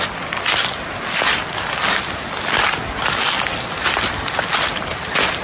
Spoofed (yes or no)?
no